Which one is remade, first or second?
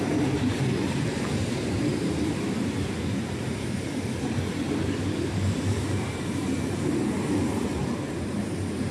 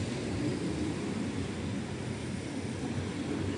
first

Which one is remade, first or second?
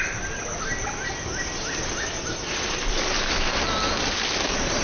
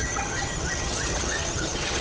second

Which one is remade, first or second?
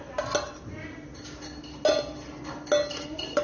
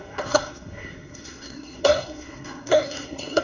second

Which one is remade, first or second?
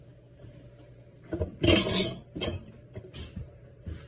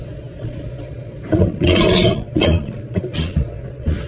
second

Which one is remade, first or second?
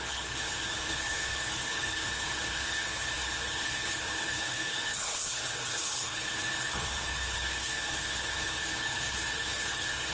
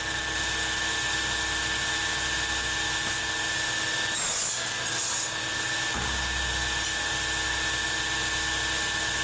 first